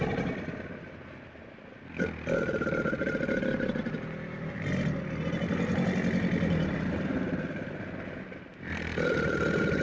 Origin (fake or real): real